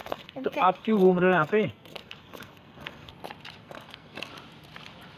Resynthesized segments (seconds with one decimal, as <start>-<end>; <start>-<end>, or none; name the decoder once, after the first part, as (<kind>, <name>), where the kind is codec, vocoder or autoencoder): 0.0-3.1 (codec, SNAC); 3.6-4.3